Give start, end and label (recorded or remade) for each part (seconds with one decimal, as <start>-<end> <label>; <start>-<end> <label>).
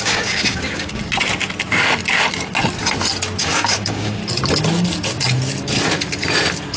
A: 0.0-1.0 remade; 1.0-3.4 recorded; 3.4-4.2 remade; 4.2-6.8 recorded